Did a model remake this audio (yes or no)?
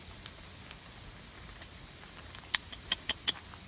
no